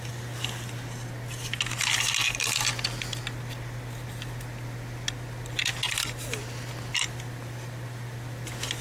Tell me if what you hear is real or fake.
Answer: real